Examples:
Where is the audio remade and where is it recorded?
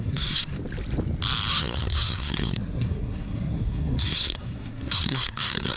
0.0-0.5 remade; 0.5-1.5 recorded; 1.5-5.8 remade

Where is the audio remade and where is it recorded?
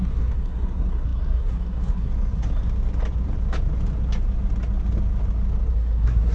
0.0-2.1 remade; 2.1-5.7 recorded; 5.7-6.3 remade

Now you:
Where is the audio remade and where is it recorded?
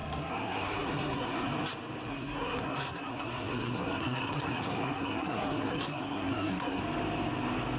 0.0-1.5 remade; 1.5-2.1 recorded; 2.1-6.8 remade; 6.8-7.8 recorded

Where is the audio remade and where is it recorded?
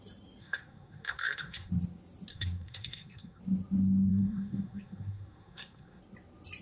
0.0-0.4 recorded; 0.4-1.7 remade; 1.7-2.3 recorded; 2.3-3.4 remade; 3.4-4.1 recorded; 4.1-6.0 remade; 6.0-6.6 recorded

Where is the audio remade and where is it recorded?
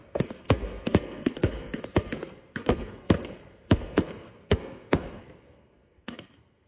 0.0-6.7 remade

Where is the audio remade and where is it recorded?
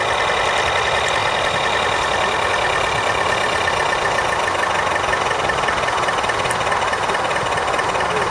0.0-8.3 recorded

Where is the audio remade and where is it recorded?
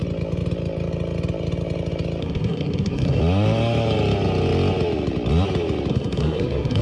0.0-2.2 recorded; 2.2-3.2 remade; 3.2-5.9 recorded; 5.9-6.8 remade